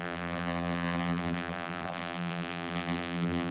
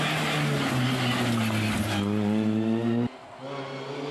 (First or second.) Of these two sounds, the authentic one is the second